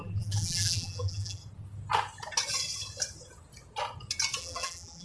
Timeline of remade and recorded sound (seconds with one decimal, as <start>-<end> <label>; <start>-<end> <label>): 0.0-1.4 remade; 1.4-4.4 recorded; 4.4-5.0 remade